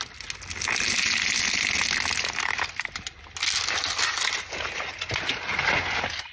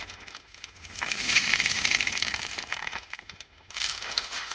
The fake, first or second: second